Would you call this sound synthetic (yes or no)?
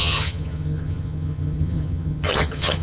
yes